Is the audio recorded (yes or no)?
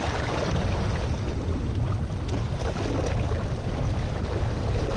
yes